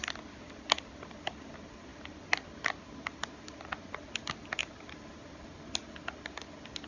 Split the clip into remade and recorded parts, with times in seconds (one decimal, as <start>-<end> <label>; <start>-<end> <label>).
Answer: 0.0-6.9 recorded